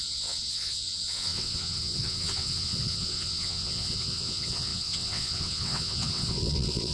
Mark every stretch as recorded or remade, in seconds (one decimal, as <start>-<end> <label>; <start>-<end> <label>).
0.0-6.9 remade